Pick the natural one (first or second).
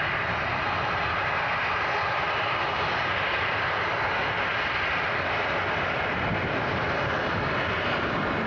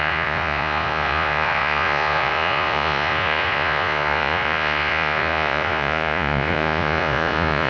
first